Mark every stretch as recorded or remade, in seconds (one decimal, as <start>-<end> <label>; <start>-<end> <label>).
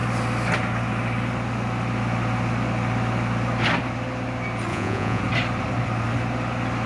0.0-4.7 recorded; 4.7-5.2 remade; 5.2-6.9 recorded